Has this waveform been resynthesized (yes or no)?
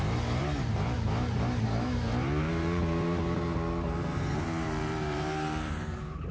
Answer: yes